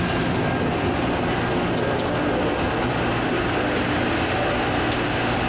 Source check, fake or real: real